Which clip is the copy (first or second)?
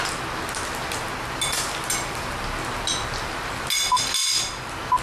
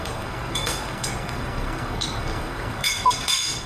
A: second